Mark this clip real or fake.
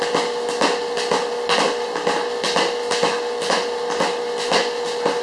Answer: real